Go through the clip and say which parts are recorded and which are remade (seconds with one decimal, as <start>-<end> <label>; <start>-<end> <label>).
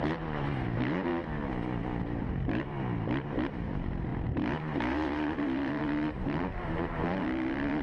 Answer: 0.0-1.1 remade; 1.1-2.2 recorded; 2.2-7.8 remade